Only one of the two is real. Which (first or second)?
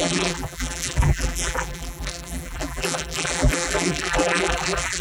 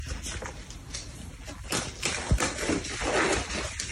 second